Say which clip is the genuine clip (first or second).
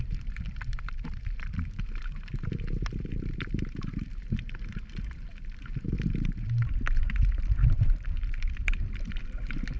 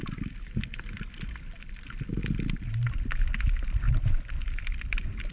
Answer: second